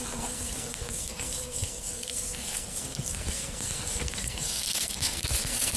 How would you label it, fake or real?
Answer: fake